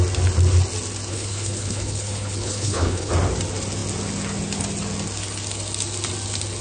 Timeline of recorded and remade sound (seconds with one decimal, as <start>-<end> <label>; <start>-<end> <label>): 0.0-1.1 recorded; 1.1-3.1 remade; 3.1-6.6 recorded